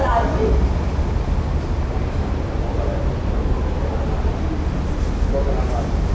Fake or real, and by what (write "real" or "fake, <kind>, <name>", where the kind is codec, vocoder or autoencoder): real